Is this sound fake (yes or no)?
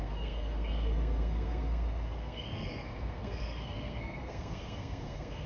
yes